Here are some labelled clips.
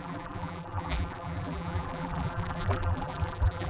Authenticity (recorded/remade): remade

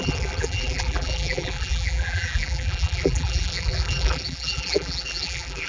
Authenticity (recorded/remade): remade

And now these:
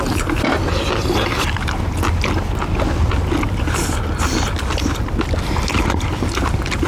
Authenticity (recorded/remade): recorded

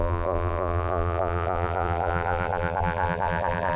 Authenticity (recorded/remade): remade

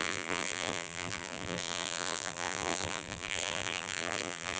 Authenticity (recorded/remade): remade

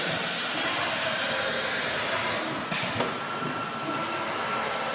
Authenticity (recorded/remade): recorded